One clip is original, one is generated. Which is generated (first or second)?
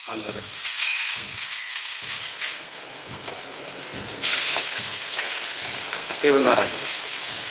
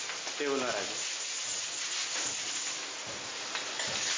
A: first